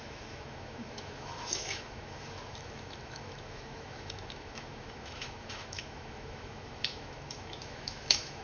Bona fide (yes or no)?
no